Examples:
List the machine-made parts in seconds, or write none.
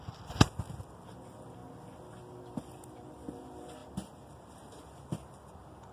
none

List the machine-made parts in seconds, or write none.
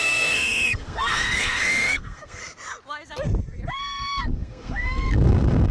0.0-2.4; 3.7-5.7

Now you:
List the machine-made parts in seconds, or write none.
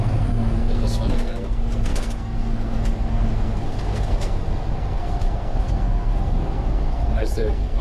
0.0-7.8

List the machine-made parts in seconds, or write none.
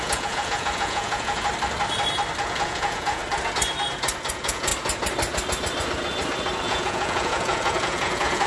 0.0-1.5; 2.4-3.2; 4.3-4.7; 6.6-8.5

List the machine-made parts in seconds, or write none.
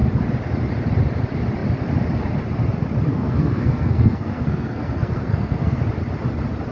3.1-5.8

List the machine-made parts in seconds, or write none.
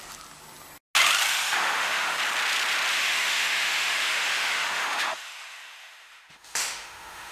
1.3-2.2; 2.9-7.3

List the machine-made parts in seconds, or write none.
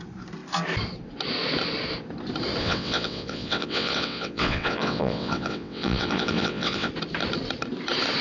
2.6-6.9